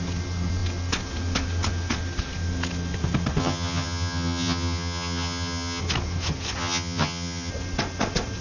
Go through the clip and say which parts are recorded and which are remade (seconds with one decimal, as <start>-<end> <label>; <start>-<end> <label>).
0.0-3.4 recorded; 3.4-5.8 remade; 5.8-6.6 recorded; 6.6-7.5 remade; 7.5-8.4 recorded

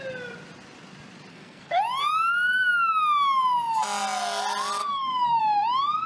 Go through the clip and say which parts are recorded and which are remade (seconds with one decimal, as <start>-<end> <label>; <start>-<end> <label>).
0.0-1.3 recorded; 1.3-1.8 remade; 1.8-4.8 recorded; 4.8-5.4 remade; 5.4-6.1 recorded

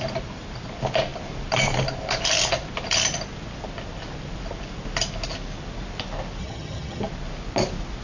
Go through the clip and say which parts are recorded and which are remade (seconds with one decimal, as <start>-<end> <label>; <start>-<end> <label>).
0.0-6.4 recorded; 6.4-7.0 remade; 7.0-8.0 recorded

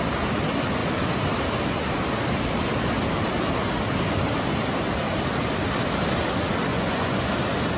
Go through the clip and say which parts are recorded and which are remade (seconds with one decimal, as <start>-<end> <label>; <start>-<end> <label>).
0.0-6.7 recorded; 6.7-7.3 remade; 7.3-7.8 recorded

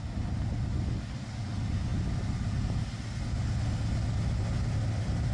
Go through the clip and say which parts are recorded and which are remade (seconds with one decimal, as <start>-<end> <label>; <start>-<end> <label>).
0.0-5.3 recorded

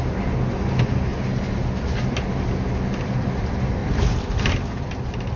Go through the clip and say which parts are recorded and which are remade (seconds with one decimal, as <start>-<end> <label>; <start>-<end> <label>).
0.0-3.8 recorded; 3.8-4.5 remade; 4.5-5.4 recorded